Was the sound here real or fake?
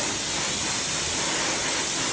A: real